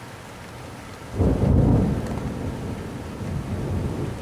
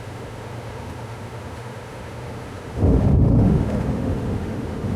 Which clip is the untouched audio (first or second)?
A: first